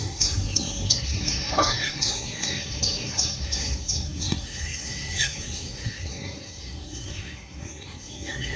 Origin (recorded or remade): remade